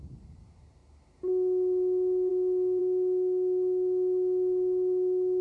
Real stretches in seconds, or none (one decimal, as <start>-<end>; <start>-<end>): 0.0-2.8